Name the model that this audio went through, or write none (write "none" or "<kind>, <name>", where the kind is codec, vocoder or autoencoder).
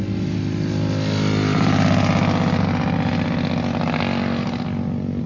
none